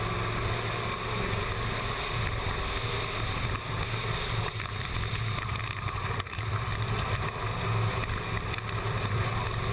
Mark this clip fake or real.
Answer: real